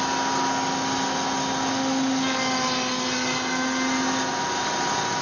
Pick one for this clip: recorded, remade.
recorded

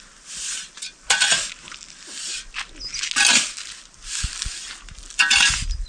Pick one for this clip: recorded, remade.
recorded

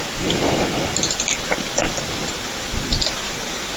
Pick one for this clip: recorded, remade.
recorded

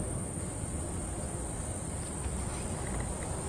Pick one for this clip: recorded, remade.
recorded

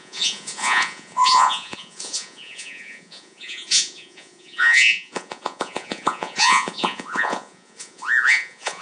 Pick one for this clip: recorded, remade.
remade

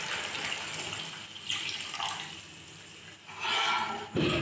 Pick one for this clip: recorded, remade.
recorded